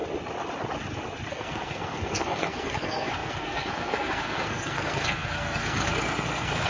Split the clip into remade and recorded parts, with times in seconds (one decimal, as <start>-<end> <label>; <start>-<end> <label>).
0.0-1.3 recorded; 1.3-6.7 remade